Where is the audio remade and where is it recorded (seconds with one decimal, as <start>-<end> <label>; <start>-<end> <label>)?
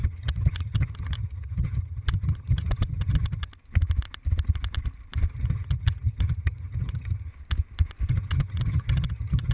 0.0-3.5 remade; 3.5-5.3 recorded; 5.3-7.3 remade; 7.3-8.1 recorded; 8.1-9.5 remade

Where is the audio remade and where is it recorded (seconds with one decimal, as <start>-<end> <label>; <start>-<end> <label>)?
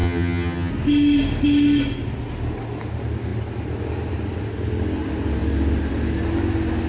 0.0-0.7 remade; 0.7-6.9 recorded